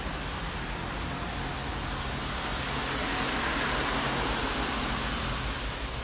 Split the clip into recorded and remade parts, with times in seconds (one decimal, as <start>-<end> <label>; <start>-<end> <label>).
0.0-6.0 recorded